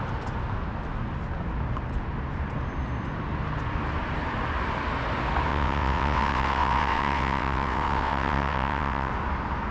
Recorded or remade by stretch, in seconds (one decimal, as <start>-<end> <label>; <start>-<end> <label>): 0.0-5.5 recorded; 5.5-9.1 remade; 9.1-9.7 recorded